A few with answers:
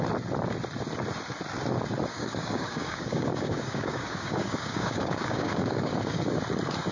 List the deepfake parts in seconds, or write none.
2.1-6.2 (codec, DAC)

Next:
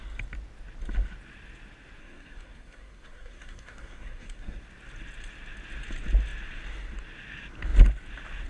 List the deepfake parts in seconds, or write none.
2.0-4.6 (codec, SNAC)

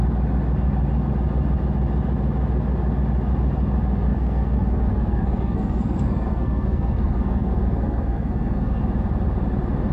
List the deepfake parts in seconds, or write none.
4.1-8.8 (codec, SNAC)

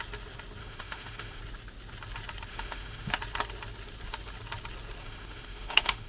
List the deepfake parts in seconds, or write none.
0.6-1.4 (autoencoder, DAC-VAE); 2.5-3.1; 5.0-6.1

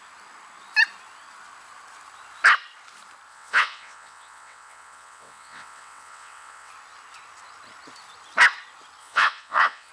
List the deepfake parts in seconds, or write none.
3.3-6.7 (vocoder, WaveNeXt); 9.0-9.9

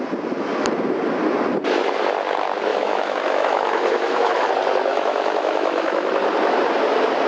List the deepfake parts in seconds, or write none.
2.7-4.5 (autoencoder, DAC-VAE); 4.9-6.1

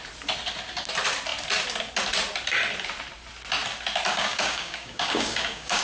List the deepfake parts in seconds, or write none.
4.1-5.8 (codec, DAC)

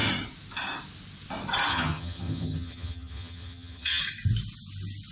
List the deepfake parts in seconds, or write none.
1.7-4.0 (vocoder, HiFi-GAN)